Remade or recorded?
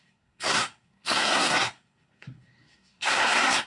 remade